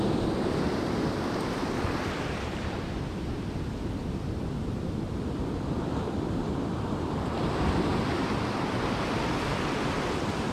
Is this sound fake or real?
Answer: fake